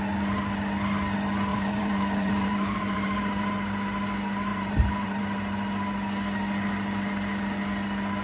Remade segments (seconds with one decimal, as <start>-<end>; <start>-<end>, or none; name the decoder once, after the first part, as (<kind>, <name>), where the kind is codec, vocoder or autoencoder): 1.5-3.5 (vocoder, BigVGAN v2); 4.5-5.2